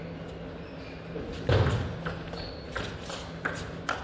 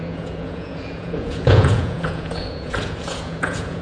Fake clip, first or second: second